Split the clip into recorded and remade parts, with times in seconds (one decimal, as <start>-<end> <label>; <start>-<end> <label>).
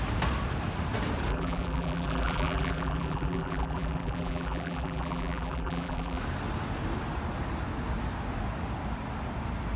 0.0-1.3 recorded; 1.3-6.2 remade; 6.2-9.8 recorded